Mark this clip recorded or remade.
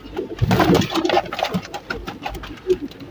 recorded